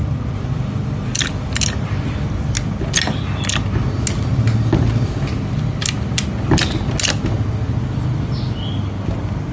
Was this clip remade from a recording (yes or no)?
no